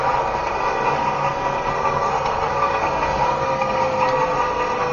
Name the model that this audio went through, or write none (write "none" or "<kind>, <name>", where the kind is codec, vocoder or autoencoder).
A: codec, SNAC